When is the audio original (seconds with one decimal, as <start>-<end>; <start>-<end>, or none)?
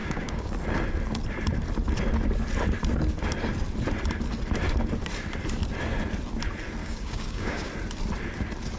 0.5-6.8; 7.7-8.8